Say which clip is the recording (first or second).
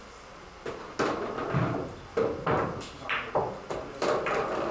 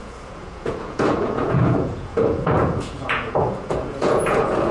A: first